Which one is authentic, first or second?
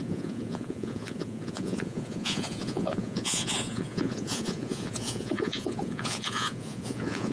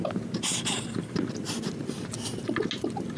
second